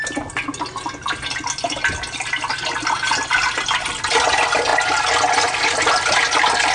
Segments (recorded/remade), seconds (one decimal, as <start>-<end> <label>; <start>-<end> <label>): 0.0-6.7 recorded

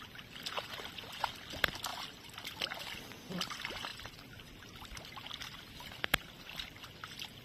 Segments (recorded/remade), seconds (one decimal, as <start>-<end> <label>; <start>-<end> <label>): 0.0-7.4 recorded

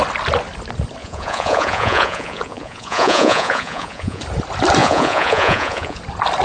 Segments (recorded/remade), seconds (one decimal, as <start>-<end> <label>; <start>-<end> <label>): 0.0-1.0 recorded; 1.0-4.2 remade; 4.2-4.8 recorded; 4.8-6.0 remade; 6.0-6.4 recorded

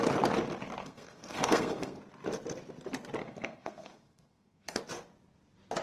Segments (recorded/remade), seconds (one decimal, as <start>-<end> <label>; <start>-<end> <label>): 0.0-0.8 recorded; 0.8-2.0 remade; 2.0-3.2 recorded; 3.2-4.8 remade; 4.8-5.8 recorded

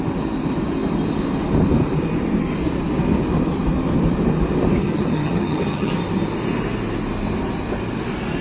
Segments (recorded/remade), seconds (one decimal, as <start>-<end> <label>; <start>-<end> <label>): 0.0-4.8 recorded; 4.8-5.9 remade; 5.9-8.4 recorded

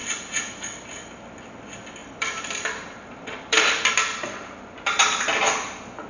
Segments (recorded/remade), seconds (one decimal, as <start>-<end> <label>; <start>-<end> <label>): 0.0-2.0 recorded; 2.0-3.9 remade; 3.9-6.1 recorded

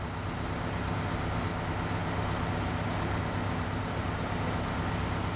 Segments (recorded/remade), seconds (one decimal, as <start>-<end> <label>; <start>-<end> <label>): 0.0-5.4 recorded